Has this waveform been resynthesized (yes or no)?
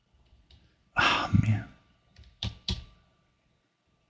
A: yes